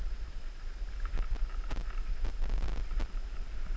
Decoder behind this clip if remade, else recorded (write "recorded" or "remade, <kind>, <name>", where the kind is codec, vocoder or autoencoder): recorded